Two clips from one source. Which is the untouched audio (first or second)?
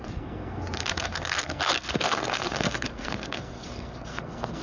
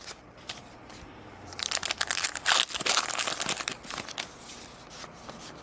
second